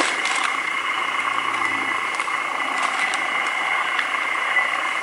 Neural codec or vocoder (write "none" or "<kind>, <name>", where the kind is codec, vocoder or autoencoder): none